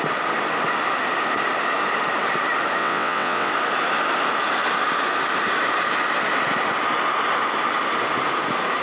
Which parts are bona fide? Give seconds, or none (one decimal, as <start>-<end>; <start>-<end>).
0.0-2.8; 3.5-8.8